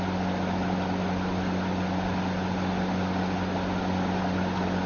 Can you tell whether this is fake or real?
real